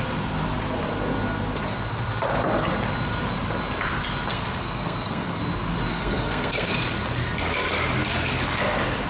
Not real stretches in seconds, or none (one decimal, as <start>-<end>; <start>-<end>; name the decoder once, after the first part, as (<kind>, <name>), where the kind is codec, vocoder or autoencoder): 4.3-5.4 (codec, SNAC); 5.9-6.7